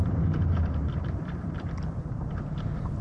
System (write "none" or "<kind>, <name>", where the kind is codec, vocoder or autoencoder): vocoder, BigVGAN v2